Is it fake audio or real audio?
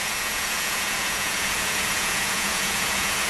fake